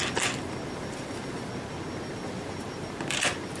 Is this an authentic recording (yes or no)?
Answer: yes